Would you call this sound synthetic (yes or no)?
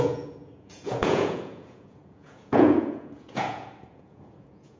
yes